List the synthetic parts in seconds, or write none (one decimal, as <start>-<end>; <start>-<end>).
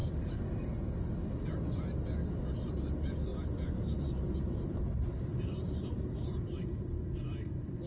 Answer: 0.0-0.6; 3.3-7.2